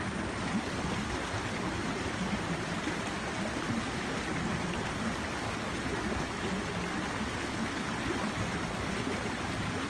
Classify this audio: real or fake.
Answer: real